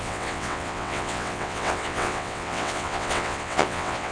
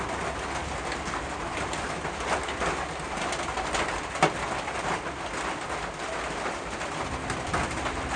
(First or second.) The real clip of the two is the second